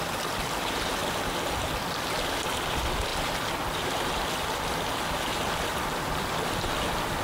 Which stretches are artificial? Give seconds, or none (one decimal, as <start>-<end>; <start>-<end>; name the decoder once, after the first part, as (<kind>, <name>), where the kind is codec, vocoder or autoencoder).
none